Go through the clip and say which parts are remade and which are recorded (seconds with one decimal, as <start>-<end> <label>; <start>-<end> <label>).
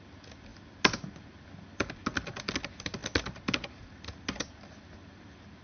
0.0-5.6 recorded